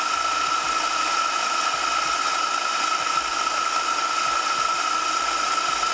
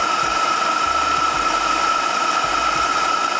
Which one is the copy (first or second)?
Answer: second